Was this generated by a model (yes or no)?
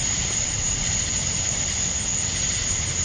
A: no